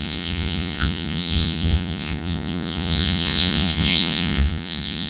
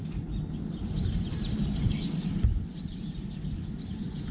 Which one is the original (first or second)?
second